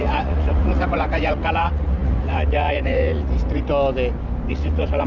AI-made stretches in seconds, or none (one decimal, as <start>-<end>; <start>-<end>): 0.0-3.7; 4.5-5.1